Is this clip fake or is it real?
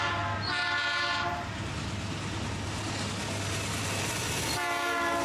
real